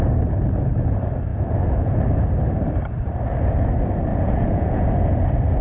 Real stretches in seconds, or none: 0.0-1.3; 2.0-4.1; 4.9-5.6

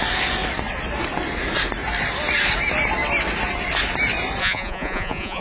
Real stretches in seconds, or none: 0.0-4.4

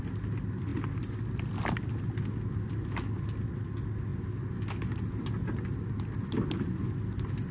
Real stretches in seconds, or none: 0.0-7.5

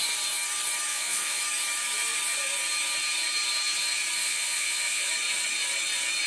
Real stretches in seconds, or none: 0.0-0.9; 1.4-4.2; 5.1-6.3

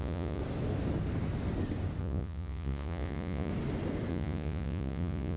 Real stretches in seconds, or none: 0.4-2.0; 3.5-4.1

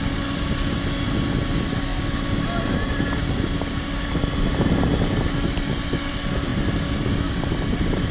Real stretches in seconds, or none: 0.0-8.1

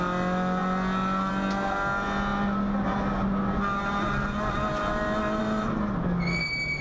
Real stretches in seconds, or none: 0.0-6.8